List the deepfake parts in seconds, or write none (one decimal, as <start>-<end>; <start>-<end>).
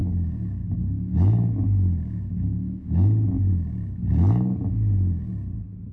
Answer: 0.0-3.5